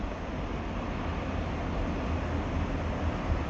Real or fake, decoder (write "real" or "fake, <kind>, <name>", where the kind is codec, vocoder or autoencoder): real